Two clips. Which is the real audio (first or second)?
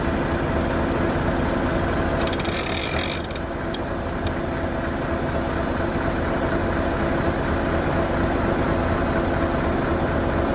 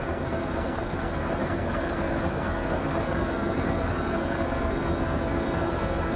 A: first